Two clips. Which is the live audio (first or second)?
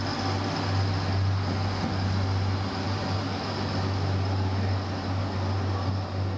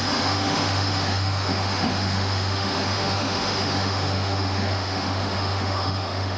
first